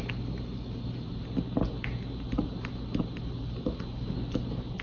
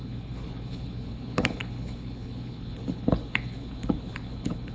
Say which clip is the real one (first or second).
first